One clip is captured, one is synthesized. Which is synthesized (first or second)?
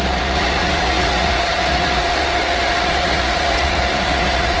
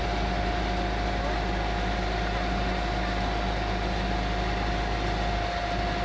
first